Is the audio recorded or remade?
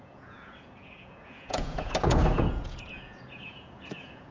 remade